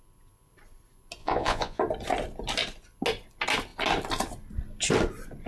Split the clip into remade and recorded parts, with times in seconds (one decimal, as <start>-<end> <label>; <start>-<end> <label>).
0.0-1.2 recorded; 1.2-1.8 remade; 1.8-5.5 recorded